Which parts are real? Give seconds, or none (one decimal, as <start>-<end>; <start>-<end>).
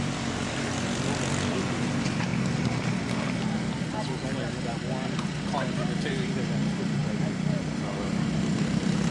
2.3-4.6